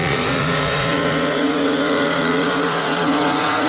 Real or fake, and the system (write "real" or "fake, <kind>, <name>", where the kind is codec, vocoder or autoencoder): fake, vocoder, Vocos